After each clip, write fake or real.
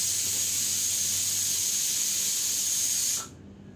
real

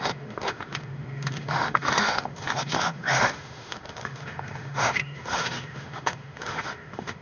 fake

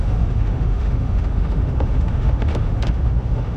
fake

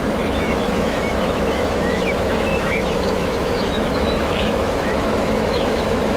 fake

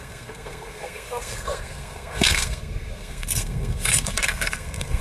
fake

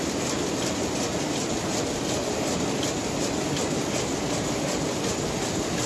real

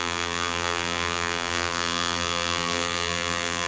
fake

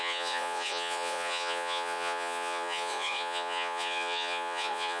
fake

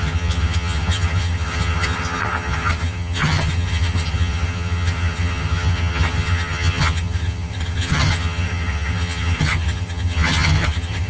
fake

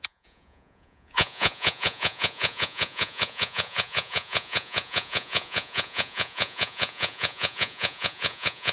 fake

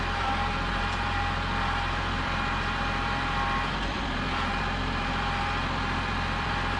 fake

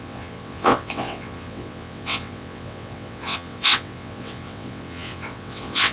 fake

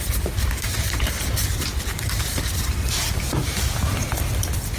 real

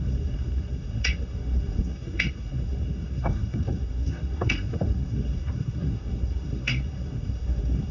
fake